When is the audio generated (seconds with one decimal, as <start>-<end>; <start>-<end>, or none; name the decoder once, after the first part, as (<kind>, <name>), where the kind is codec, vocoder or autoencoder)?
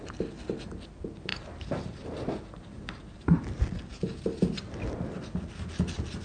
none